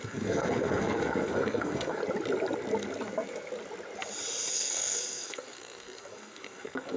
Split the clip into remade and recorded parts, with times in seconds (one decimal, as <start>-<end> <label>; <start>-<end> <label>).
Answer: 0.0-2.0 remade; 2.0-4.5 recorded; 4.5-7.0 remade